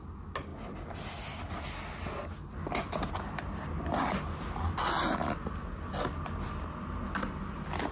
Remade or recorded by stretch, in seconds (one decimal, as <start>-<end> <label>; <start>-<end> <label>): 0.0-7.9 recorded

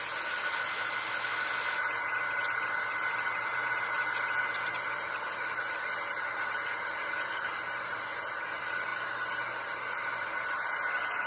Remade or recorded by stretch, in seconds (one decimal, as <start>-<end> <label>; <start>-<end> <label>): 0.0-11.3 recorded